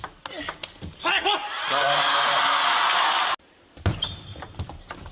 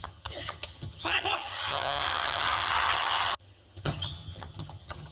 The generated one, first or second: second